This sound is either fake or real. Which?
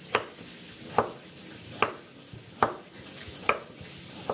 real